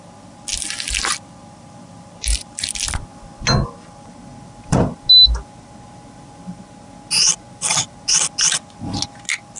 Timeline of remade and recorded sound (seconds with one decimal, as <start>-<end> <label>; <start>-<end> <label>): 0.0-0.5 recorded; 0.5-4.8 remade; 4.8-9.6 recorded